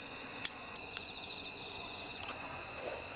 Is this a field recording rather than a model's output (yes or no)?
no